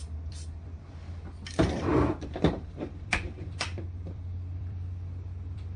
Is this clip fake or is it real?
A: fake